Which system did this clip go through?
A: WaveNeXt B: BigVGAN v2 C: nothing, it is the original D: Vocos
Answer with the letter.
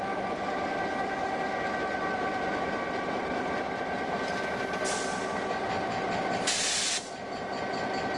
C